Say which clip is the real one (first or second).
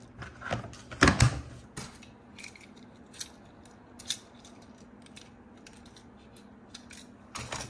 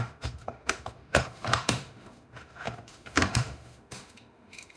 first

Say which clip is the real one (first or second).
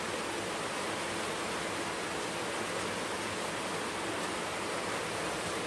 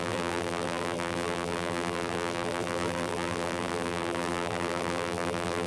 first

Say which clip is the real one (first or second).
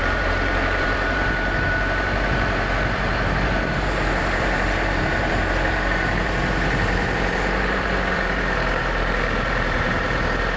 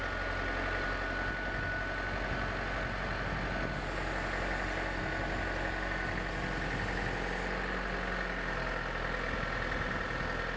second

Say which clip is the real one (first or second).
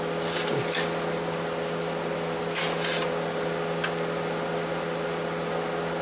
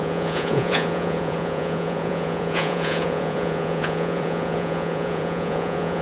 first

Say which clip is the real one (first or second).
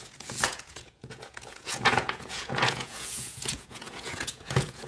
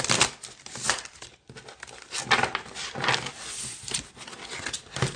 second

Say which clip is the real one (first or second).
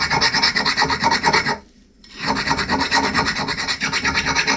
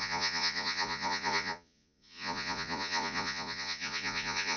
first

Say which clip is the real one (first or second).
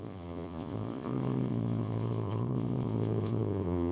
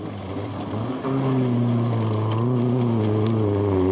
second